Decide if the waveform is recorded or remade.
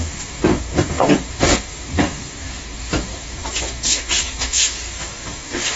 remade